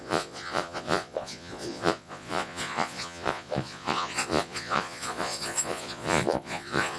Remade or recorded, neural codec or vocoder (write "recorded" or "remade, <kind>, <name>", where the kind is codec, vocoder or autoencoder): remade, vocoder, Vocos